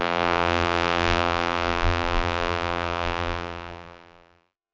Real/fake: fake